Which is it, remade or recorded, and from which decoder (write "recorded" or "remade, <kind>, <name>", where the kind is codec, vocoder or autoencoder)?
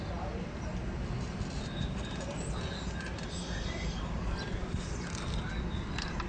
recorded